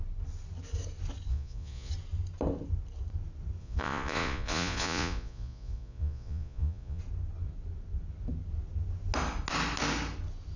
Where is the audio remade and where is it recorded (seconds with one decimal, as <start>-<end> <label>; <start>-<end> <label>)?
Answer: 0.0-1.3 recorded; 1.3-1.9 remade; 1.9-3.6 recorded; 3.6-7.0 remade; 7.0-10.6 recorded